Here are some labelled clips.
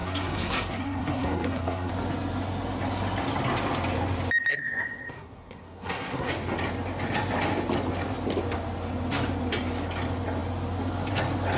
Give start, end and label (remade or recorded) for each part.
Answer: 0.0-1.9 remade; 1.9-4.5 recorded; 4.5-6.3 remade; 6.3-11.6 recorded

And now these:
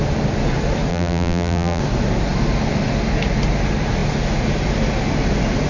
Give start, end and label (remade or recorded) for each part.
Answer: 0.0-0.9 recorded; 0.9-1.8 remade; 1.8-5.7 recorded

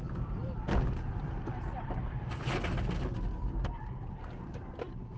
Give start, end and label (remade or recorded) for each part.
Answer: 0.0-0.4 recorded; 0.4-1.9 remade; 1.9-5.2 recorded